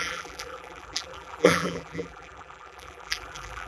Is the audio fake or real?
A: fake